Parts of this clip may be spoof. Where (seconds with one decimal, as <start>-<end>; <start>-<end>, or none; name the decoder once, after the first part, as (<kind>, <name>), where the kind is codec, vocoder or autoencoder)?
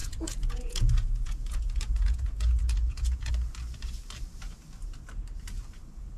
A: 0.0-3.3 (vocoder, Vocos)